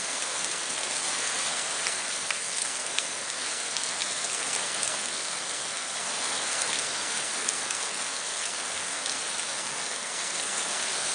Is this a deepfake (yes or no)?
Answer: yes